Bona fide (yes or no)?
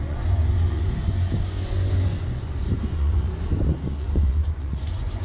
no